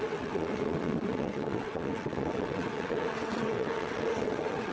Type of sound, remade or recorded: remade